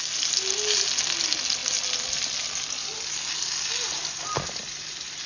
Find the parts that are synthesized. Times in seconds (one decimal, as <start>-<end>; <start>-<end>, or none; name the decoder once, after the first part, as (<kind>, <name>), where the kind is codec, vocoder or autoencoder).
none